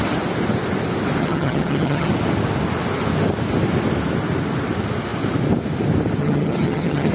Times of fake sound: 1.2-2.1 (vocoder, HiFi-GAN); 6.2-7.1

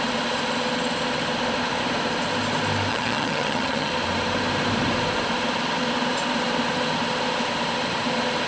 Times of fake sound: 2.9-3.9 (vocoder, HiFi-GAN)

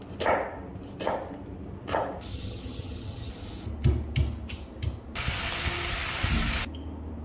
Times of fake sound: 2.3-3.3 (vocoder, HiFi-GAN)